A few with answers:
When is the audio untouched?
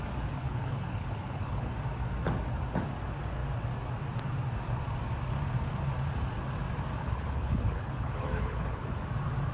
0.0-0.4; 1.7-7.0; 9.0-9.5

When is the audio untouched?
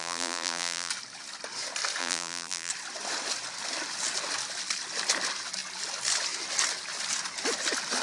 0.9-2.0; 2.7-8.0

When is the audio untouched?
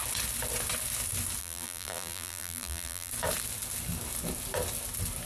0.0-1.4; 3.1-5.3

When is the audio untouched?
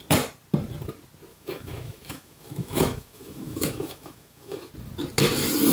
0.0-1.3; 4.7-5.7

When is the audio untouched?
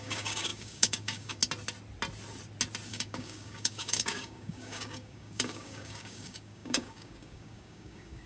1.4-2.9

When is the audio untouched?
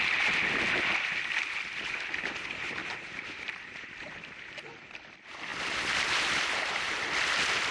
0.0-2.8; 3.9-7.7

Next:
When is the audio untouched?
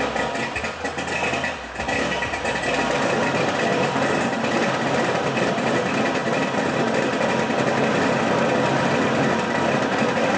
0.0-10.4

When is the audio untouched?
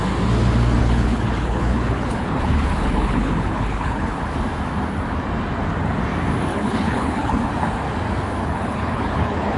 0.0-0.8; 4.2-6.5; 7.5-8.4